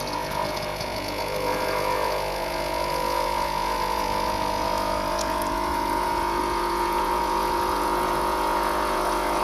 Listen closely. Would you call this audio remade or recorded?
remade